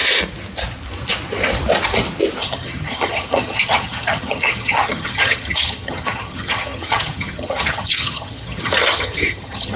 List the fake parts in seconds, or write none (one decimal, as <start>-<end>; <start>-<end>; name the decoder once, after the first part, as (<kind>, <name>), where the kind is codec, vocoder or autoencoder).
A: 2.4-9.8 (vocoder, HiFi-GAN)